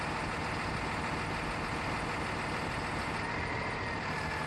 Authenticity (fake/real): real